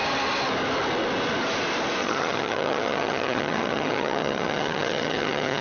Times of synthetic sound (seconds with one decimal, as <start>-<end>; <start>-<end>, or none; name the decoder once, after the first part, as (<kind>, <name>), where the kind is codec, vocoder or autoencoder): 2.0-5.6 (vocoder, HiFi-GAN)